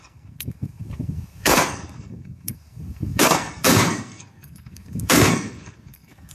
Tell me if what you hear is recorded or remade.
remade